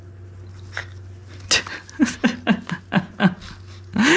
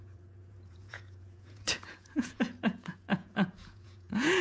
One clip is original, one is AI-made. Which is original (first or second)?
first